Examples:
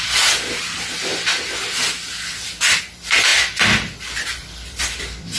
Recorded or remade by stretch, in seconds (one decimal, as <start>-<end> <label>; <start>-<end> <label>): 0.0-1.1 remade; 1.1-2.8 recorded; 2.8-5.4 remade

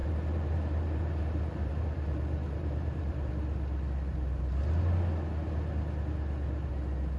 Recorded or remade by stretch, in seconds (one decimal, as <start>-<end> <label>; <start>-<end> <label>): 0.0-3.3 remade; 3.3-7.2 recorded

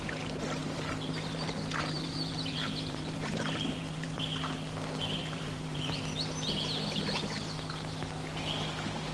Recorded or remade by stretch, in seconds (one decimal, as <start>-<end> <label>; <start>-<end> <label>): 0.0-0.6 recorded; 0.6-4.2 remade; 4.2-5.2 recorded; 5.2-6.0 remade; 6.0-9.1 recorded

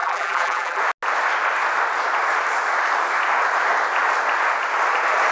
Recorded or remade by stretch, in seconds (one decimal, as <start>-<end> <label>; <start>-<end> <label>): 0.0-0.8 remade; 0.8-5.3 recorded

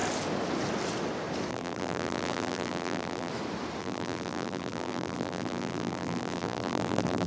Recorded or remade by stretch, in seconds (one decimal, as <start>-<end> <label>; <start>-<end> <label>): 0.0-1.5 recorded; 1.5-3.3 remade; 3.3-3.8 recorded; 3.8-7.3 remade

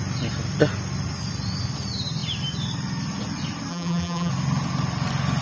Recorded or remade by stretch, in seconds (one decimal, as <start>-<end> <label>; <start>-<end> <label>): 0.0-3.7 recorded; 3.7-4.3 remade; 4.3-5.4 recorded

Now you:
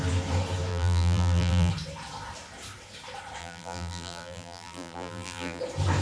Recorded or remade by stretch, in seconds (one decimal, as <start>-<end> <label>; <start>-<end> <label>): 0.0-0.7 recorded; 0.7-1.7 remade; 1.7-3.4 recorded; 3.4-5.6 remade; 5.6-6.0 recorded